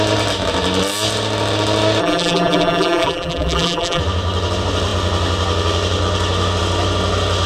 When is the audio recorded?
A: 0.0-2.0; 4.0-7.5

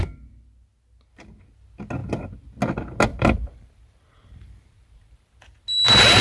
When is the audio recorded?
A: 0.0-3.1; 5.3-6.2

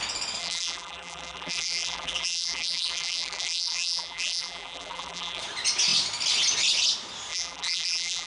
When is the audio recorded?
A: 0.0-0.4; 5.4-7.3

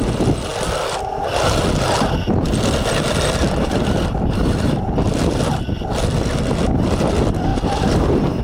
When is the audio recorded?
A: 0.0-7.5

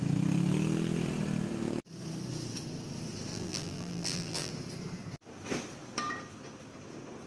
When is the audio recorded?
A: 0.0-3.3; 4.5-7.3

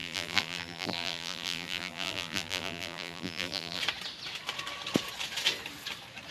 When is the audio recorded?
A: 3.8-6.3

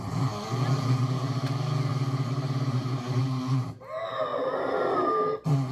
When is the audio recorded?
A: 0.0-1.9; 3.2-5.7

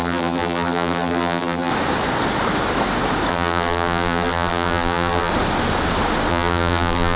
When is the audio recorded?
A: 1.7-3.3; 5.3-6.3